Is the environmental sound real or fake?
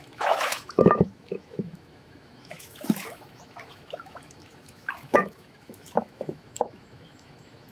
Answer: fake